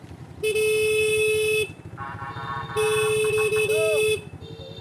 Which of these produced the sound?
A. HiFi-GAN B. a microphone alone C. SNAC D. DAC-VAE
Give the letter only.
B